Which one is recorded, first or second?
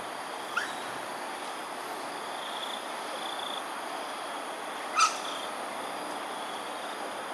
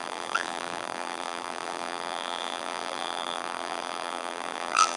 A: first